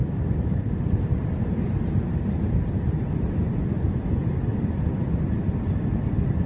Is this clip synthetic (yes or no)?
no